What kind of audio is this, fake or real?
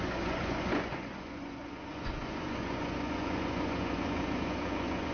fake